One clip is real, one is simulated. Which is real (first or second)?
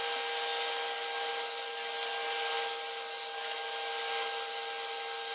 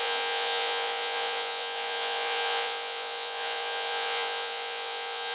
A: first